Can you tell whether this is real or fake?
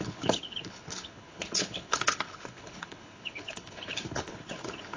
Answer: fake